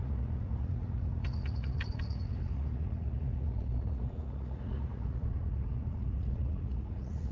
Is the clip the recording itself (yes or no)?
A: no